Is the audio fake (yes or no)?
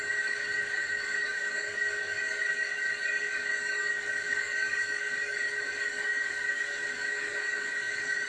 yes